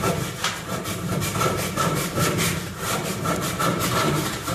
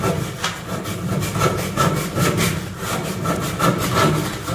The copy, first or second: first